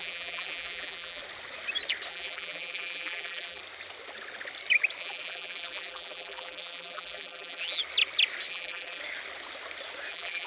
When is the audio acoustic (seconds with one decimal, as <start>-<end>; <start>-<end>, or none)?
1.2-2.1; 3.6-5.0; 7.8-8.5; 9.0-10.1